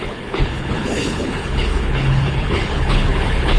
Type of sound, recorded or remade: remade